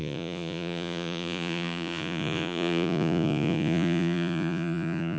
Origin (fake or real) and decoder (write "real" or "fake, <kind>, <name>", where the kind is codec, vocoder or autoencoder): fake, vocoder, Vocos